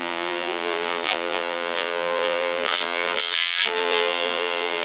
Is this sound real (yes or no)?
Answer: no